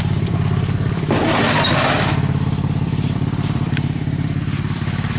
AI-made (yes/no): yes